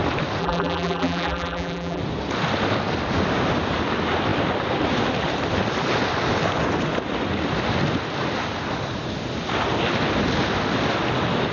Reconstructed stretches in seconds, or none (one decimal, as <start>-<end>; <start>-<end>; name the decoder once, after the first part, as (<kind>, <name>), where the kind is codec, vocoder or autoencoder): 0.4-2.0 (vocoder, BigVGAN v2)